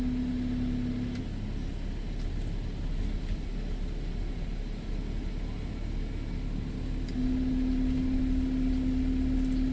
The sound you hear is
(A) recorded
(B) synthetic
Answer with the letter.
A